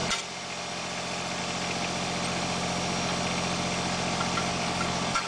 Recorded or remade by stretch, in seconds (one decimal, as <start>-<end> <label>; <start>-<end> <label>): 0.0-4.5 recorded; 4.5-5.3 remade